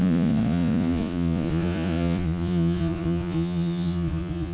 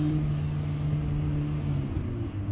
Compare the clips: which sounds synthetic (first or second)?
first